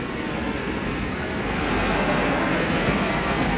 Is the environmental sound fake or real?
fake